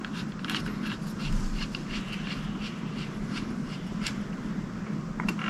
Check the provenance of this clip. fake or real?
real